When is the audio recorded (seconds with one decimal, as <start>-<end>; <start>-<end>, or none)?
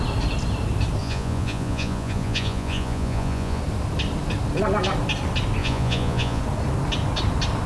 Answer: 0.0-1.0; 3.6-5.6; 6.4-7.7